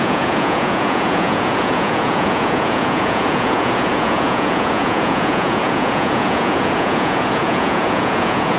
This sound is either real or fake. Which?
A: fake